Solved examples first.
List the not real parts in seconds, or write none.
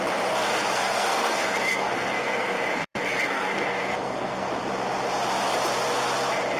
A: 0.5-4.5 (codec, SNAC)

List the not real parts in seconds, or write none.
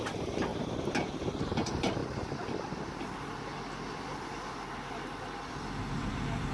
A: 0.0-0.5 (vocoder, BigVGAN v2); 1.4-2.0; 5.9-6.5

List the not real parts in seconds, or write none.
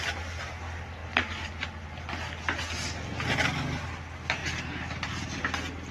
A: 4.4-5.4 (vocoder, BigVGAN v2)